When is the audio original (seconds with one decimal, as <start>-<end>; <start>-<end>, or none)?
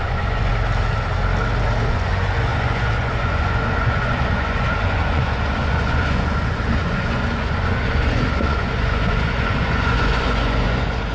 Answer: 0.5-1.9